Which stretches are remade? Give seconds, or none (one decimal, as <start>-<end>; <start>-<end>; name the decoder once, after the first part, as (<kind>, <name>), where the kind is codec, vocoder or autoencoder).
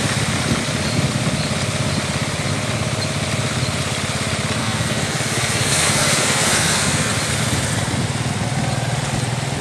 4.6-7.1 (codec, SNAC)